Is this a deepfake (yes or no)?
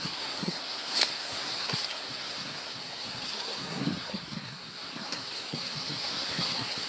yes